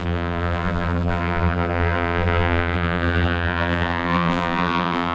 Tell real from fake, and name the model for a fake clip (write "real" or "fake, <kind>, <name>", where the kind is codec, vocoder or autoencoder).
fake, vocoder, BigVGAN v2